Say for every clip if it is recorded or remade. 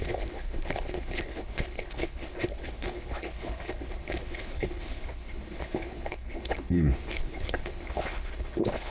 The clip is remade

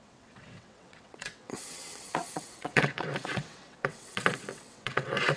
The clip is remade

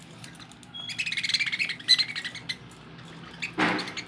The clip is recorded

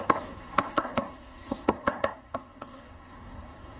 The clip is remade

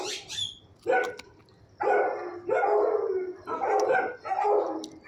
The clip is recorded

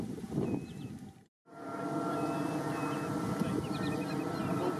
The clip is recorded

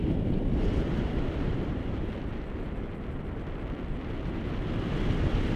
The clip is remade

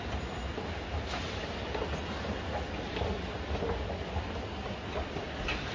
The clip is recorded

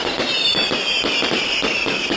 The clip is remade